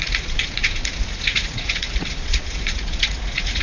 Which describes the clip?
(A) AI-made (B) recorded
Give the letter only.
A